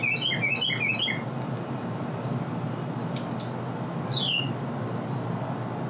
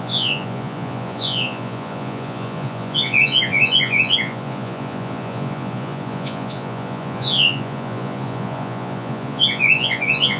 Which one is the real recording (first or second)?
first